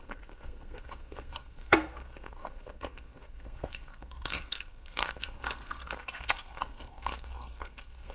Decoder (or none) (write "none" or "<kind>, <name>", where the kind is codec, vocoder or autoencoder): codec, SNAC